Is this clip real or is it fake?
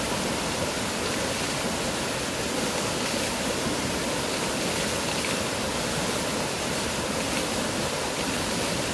real